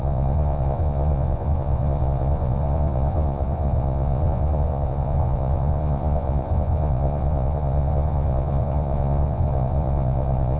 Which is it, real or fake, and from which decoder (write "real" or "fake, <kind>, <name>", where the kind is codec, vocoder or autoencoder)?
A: fake, vocoder, Vocos